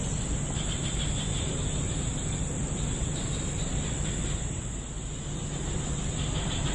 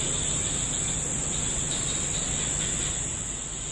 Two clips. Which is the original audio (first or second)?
second